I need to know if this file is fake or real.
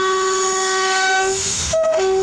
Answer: fake